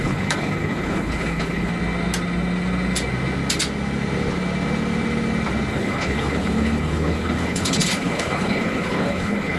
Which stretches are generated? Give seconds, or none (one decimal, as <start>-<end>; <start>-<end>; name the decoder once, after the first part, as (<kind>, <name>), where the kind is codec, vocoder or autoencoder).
0.0-1.7 (codec, HILCodec); 5.7-9.6